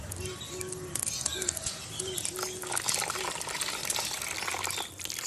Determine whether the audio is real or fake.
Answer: real